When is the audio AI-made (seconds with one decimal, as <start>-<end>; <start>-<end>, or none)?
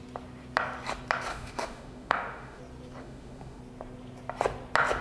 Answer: 1.3-2.6; 3.0-3.6